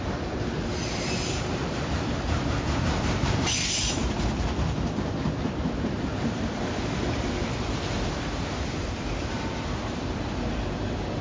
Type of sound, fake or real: fake